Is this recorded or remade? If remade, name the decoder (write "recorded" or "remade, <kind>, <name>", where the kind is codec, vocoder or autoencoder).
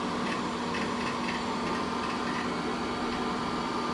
recorded